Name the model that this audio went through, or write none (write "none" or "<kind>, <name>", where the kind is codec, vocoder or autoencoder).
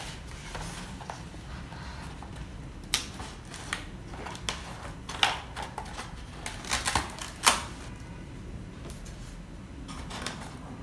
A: none